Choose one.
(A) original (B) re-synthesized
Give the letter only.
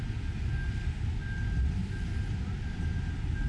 A